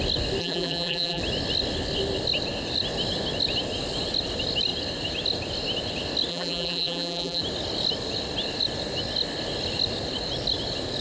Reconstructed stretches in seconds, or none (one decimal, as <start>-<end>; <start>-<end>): 0.4-1.2; 6.3-7.4